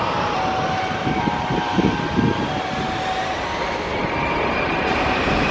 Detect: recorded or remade recorded